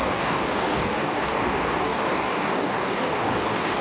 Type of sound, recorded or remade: remade